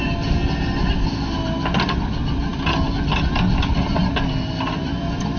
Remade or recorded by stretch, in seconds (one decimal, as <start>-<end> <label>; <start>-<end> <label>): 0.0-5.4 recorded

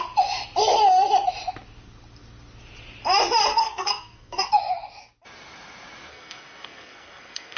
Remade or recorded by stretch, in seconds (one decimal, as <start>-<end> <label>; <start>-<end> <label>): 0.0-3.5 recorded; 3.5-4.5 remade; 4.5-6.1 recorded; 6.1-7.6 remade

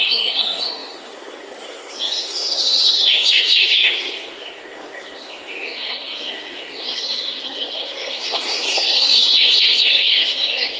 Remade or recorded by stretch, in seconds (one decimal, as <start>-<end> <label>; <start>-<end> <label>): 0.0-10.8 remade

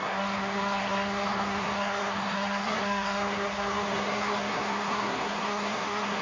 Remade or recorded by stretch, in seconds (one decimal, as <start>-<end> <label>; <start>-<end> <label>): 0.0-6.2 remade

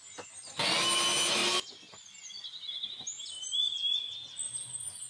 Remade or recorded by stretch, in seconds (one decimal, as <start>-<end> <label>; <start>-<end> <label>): 0.0-5.1 recorded

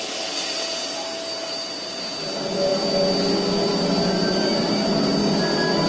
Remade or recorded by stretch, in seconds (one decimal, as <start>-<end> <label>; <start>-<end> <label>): 0.0-5.9 recorded

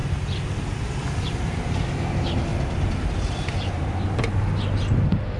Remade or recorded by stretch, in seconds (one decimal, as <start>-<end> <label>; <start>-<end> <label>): 0.0-5.4 recorded